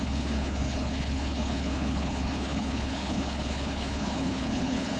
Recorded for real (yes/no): no